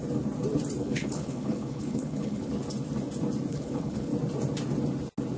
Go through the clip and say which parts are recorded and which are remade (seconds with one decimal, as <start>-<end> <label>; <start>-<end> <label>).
0.0-0.8 recorded; 0.8-2.5 remade; 2.5-3.5 recorded; 3.5-4.1 remade; 4.1-5.4 recorded